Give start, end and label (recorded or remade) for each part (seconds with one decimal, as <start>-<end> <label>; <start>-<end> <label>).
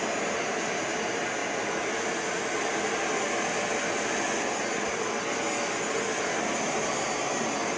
0.0-7.8 recorded